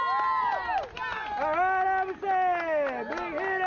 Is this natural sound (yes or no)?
yes